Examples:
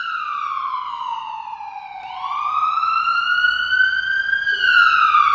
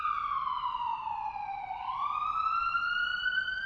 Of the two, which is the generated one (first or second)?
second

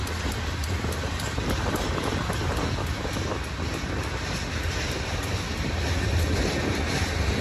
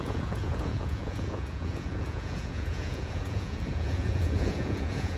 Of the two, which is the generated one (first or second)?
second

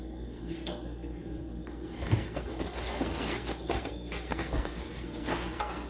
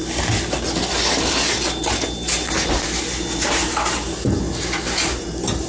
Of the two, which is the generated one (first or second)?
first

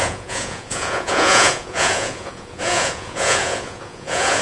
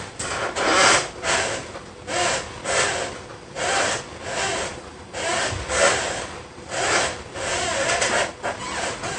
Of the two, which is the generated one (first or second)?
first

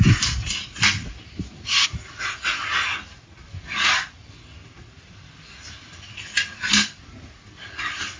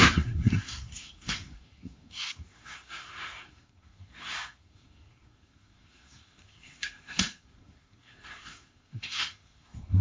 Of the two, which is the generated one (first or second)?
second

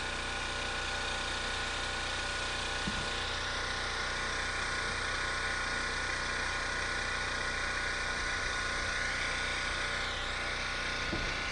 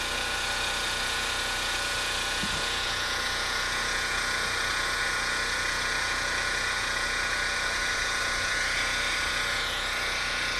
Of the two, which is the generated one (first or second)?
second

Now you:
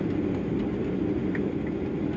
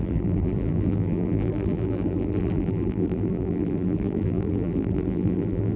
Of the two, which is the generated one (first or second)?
second